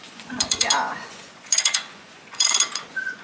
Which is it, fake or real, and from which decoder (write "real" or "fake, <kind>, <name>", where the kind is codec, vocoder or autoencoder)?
fake, vocoder, Vocos